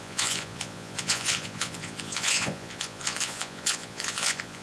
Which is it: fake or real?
fake